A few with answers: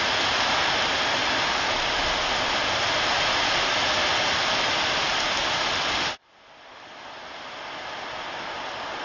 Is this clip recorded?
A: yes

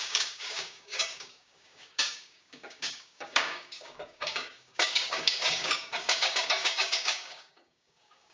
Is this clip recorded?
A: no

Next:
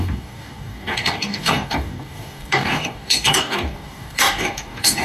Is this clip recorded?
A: no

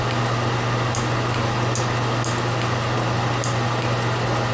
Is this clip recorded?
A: yes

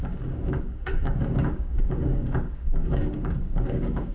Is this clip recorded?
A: no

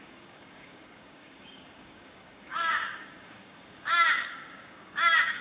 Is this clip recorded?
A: no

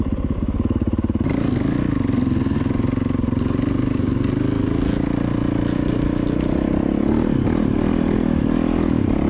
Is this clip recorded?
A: yes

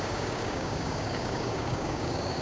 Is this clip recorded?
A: no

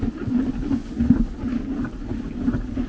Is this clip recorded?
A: yes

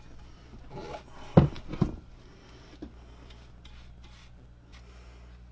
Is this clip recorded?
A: yes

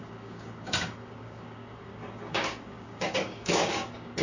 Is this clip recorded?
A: no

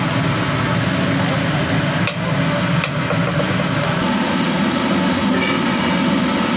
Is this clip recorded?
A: yes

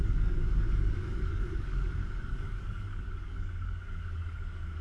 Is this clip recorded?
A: no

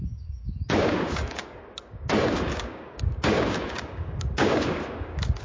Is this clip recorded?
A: no